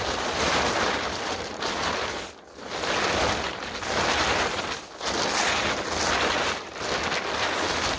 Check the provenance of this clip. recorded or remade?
recorded